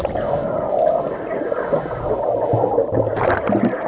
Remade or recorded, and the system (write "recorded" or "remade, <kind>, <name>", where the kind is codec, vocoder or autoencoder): recorded